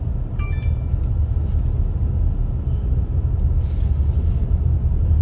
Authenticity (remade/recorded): recorded